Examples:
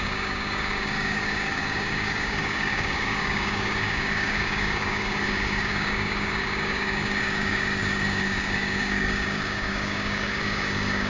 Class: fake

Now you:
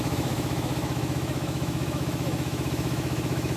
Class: fake